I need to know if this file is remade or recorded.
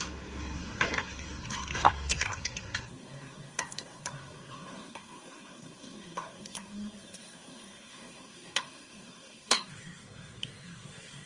remade